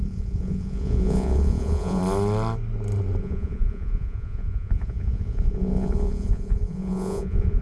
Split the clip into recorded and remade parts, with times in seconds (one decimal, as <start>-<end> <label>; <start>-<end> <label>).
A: 0.0-2.0 remade; 2.0-3.2 recorded; 3.2-7.6 remade